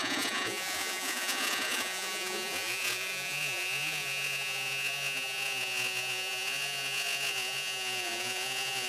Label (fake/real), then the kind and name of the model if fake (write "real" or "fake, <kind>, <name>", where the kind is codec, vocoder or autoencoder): fake, vocoder, Vocos